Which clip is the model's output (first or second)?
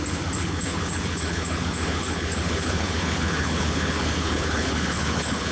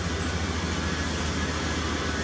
first